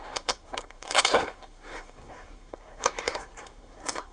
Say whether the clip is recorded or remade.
remade